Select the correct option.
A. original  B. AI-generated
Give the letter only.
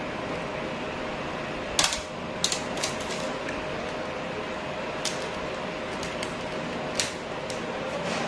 A